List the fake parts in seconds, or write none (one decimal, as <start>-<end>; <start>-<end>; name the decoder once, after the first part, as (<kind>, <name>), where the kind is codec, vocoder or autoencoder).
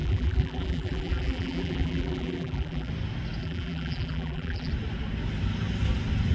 0.0-2.9 (vocoder, BigVGAN v2); 3.4-4.7